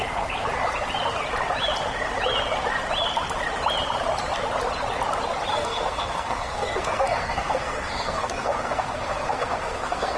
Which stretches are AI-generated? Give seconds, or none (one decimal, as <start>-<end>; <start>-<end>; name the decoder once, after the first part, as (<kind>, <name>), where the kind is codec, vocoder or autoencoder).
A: 5.5-10.2 (codec, SNAC)